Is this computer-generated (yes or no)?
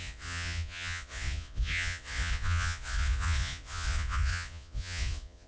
yes